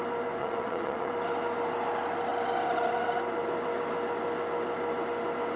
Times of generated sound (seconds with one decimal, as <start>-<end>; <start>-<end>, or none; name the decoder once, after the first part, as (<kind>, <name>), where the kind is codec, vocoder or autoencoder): 0.4-1.1 (vocoder, Vocos)